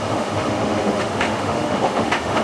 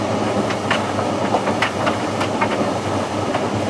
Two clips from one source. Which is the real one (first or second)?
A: second